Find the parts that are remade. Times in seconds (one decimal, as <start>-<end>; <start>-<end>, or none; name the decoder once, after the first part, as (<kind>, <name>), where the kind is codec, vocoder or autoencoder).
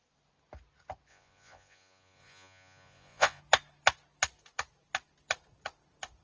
1.1-3.4 (vocoder, Vocos)